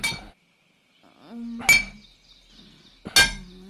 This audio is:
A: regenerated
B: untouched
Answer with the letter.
B